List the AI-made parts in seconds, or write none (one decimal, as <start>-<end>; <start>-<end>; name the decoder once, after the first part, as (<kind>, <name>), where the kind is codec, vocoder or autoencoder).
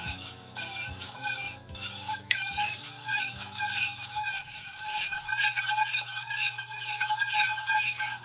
0.0-5.3 (autoencoder, DAC-VAE); 5.9-8.2